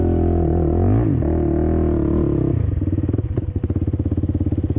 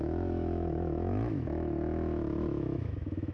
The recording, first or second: first